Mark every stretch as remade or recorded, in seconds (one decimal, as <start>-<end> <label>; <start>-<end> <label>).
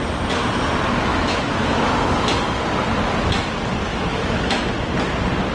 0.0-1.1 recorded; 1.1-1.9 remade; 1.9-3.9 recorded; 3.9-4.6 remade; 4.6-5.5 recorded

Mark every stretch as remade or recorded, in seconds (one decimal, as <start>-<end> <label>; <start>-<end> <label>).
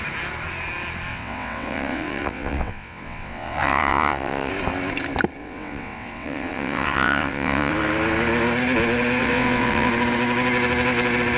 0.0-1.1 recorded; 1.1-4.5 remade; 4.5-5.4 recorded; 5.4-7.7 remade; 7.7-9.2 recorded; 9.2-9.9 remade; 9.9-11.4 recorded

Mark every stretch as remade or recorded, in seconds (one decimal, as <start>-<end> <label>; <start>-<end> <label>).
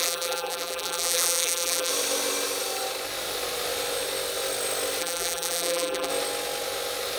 0.0-1.9 remade; 1.9-5.0 recorded; 5.0-6.1 remade; 6.1-7.2 recorded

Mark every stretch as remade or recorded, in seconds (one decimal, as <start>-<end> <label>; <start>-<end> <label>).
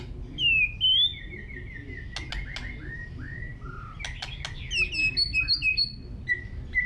0.0-6.9 recorded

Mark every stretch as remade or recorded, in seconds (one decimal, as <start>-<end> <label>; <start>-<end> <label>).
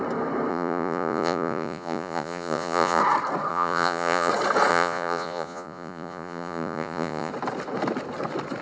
0.0-0.5 recorded; 0.5-3.0 remade; 3.0-3.5 recorded; 3.5-4.3 remade; 4.3-4.7 recorded; 4.7-7.3 remade; 7.3-8.6 recorded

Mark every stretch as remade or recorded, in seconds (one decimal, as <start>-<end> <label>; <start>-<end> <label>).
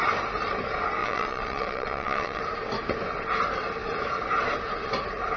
0.0-1.0 recorded; 1.0-2.4 remade; 2.4-5.4 recorded